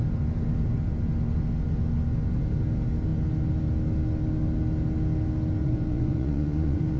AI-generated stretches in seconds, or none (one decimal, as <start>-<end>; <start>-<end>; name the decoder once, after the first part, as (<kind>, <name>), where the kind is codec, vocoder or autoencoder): 5.6-7.0 (vocoder, Vocos)